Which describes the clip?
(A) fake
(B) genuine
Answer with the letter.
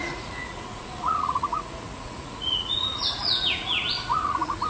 A